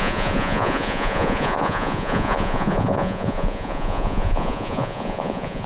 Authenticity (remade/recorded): remade